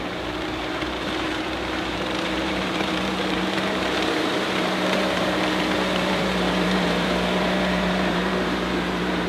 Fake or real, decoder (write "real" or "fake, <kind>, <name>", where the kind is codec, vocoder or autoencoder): fake, vocoder, BigVGAN v2